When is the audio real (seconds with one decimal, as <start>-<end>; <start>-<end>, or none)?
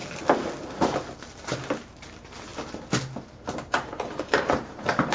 0.0-1.8; 2.5-3.3